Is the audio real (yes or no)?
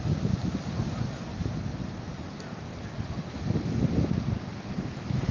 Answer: yes